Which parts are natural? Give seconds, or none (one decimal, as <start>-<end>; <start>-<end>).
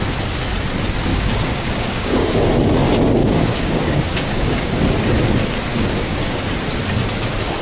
0.0-1.1; 2.5-3.2; 4.8-5.7; 6.4-7.6